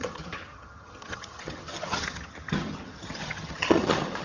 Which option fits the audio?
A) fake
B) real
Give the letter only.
A